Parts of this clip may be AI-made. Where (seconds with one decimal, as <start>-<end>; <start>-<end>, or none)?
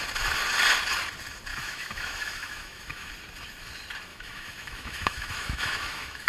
1.5-3.1; 4.1-6.3